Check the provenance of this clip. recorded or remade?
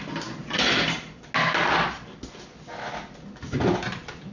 recorded